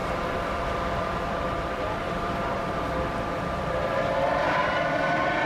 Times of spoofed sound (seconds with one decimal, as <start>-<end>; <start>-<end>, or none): 0.0-4.6